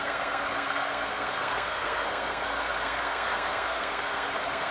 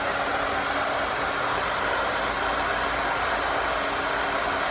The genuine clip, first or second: second